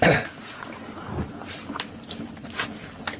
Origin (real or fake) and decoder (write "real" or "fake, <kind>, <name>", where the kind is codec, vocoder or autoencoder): real